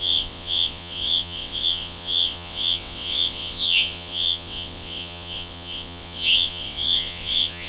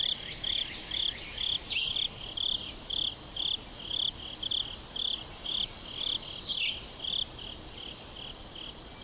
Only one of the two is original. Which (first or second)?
second